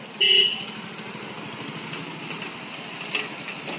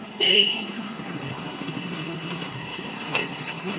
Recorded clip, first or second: first